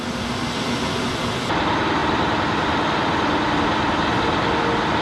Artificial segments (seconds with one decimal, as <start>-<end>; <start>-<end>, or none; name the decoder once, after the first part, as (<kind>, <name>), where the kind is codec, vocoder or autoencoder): none